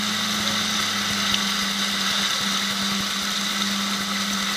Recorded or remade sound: recorded